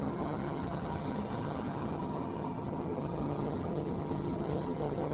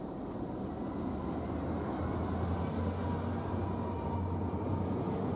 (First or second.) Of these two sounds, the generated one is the first